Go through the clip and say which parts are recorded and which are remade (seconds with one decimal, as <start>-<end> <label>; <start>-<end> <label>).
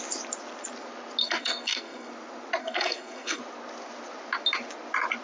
0.0-1.2 recorded; 1.2-2.1 remade; 2.1-2.6 recorded; 2.6-3.4 remade; 3.4-5.2 recorded